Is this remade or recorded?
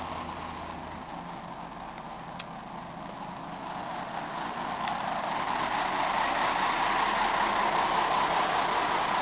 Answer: recorded